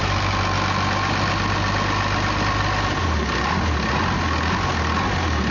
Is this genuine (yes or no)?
yes